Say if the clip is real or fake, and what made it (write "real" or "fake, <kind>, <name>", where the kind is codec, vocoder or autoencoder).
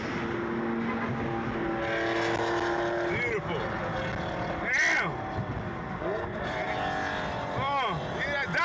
real